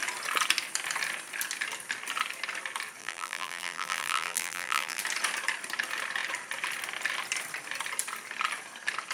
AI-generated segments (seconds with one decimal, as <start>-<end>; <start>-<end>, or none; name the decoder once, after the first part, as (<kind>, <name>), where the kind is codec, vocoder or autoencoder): 3.0-5.0 (vocoder, BigVGAN v2)